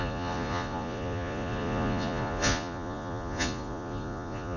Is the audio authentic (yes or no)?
no